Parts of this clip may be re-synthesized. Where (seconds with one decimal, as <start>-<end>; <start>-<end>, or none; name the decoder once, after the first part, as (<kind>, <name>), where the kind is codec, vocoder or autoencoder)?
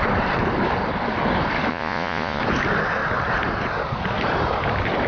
1.7-2.4 (vocoder, Vocos)